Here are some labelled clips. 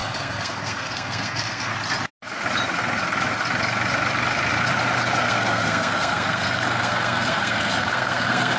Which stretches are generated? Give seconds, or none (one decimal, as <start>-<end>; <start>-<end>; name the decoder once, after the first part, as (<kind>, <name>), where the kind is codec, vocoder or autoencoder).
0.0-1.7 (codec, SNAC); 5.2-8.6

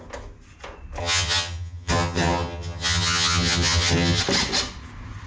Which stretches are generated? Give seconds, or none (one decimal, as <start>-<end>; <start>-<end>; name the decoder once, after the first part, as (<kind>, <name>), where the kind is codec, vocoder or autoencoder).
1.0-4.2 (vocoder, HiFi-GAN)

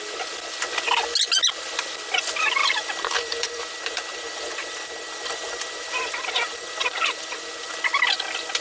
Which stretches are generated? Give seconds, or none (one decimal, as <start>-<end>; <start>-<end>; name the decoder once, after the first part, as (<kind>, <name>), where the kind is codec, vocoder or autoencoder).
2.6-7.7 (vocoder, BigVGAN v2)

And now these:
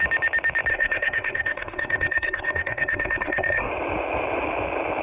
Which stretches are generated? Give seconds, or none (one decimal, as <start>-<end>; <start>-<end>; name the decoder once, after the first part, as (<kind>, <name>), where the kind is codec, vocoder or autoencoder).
0.7-3.7 (codec, SNAC)

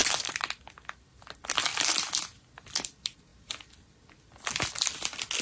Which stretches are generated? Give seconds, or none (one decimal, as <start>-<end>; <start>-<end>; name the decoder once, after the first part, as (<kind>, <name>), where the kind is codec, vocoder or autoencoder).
0.0-0.5 (vocoder, BigVGAN v2)

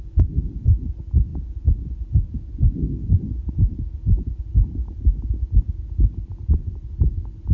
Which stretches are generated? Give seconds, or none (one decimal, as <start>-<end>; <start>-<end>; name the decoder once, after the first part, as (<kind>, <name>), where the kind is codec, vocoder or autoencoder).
none

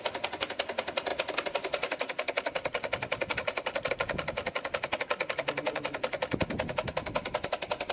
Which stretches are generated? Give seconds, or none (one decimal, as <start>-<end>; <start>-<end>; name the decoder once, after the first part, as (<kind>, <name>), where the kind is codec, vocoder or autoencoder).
none